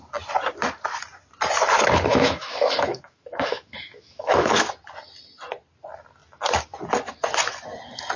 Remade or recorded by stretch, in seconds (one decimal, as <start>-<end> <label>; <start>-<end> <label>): 0.0-2.1 recorded; 2.1-4.5 remade; 4.5-8.2 recorded

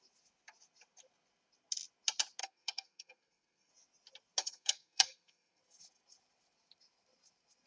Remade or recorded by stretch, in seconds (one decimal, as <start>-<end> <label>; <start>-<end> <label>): 0.0-2.4 recorded; 2.4-3.7 remade; 3.7-4.4 recorded; 4.4-5.6 remade; 5.6-7.7 recorded